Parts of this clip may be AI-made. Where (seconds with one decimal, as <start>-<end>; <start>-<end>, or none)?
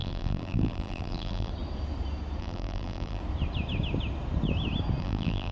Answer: 0.0-1.5; 2.4-3.2; 5.0-5.5